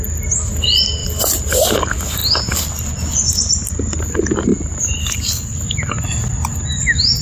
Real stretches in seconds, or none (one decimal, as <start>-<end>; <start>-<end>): 0.0-1.0; 1.6-7.2